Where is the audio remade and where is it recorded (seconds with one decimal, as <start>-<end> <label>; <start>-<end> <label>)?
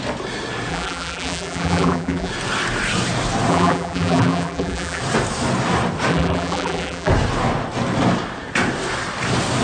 0.0-0.7 recorded; 0.7-2.3 remade; 2.3-3.5 recorded; 3.5-5.0 remade; 5.0-6.1 recorded; 6.1-7.1 remade; 7.1-9.6 recorded